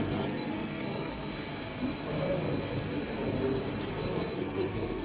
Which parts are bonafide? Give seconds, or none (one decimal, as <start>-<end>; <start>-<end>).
1.3-3.9